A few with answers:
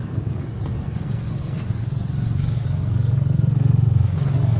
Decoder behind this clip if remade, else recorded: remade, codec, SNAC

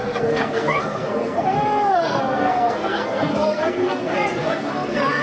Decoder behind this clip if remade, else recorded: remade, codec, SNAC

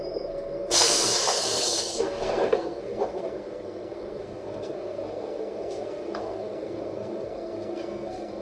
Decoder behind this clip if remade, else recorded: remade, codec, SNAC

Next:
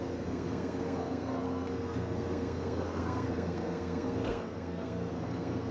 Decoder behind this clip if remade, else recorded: remade, codec, SNAC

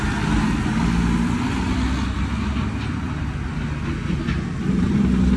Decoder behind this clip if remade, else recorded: recorded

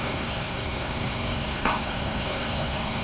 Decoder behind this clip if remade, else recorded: remade, codec, SNAC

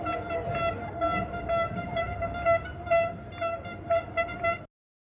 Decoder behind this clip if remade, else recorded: recorded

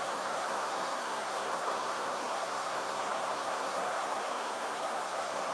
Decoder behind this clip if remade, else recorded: remade, codec, SNAC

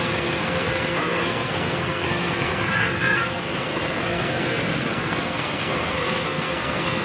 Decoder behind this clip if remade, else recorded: remade, codec, SNAC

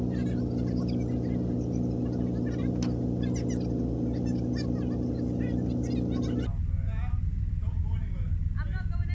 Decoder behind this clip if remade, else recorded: recorded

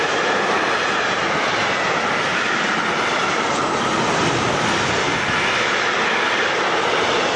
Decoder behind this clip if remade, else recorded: recorded